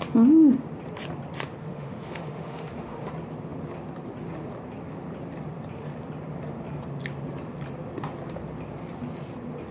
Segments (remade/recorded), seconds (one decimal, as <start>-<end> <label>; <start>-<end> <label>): 0.0-1.6 recorded; 1.6-3.1 remade; 3.1-9.7 recorded